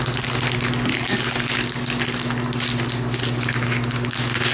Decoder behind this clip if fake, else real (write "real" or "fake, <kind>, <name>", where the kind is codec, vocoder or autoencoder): real